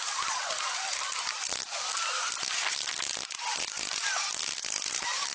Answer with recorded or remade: recorded